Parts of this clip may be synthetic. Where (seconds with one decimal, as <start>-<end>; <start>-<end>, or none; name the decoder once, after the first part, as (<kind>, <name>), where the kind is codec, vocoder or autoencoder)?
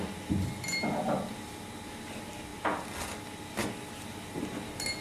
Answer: none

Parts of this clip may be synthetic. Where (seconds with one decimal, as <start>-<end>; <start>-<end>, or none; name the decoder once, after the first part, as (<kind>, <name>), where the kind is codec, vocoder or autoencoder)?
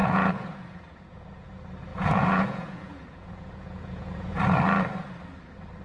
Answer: 0.0-1.5 (vocoder, Vocos); 1.9-4.4